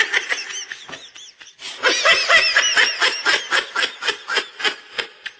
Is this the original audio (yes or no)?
yes